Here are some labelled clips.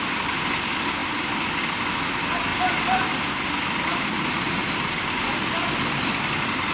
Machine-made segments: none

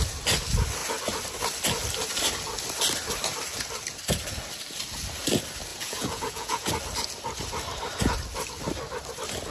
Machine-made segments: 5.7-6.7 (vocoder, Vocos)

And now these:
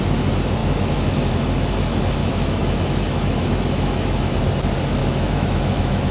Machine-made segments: 0.6-1.3 (autoencoder, DAC-VAE); 2.2-4.4; 5.0-6.1